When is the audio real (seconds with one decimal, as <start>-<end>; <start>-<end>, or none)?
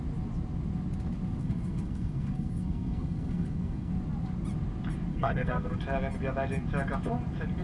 0.0-1.4; 3.9-5.1; 5.7-7.6